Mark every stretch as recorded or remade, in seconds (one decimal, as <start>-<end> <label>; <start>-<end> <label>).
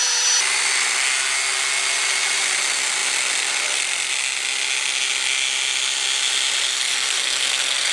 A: 0.0-6.7 recorded; 6.7-7.9 remade